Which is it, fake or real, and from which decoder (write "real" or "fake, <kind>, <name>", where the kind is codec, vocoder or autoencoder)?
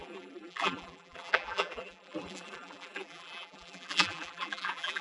fake, vocoder, BigVGAN v2